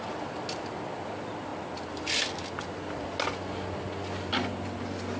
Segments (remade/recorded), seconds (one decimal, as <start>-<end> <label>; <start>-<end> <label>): 0.0-5.2 recorded

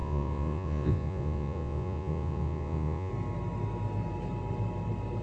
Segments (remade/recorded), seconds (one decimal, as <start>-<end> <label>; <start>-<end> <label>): 0.0-3.1 remade; 3.1-5.2 recorded

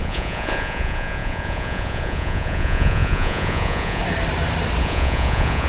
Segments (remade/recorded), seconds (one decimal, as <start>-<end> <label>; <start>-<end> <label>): 0.0-4.0 remade; 4.0-4.8 recorded; 4.8-5.7 remade

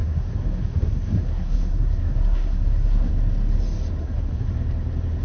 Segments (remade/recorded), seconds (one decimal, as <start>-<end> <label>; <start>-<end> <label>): 0.0-3.1 remade; 3.1-4.0 recorded; 4.0-4.5 remade; 4.5-5.2 recorded

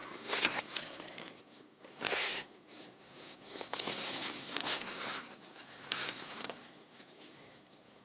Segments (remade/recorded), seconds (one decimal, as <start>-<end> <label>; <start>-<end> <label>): 0.0-8.0 remade